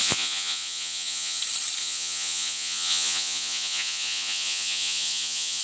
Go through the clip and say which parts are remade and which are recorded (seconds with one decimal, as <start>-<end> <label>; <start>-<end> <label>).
0.0-1.4 remade; 1.4-1.8 recorded; 1.8-5.6 remade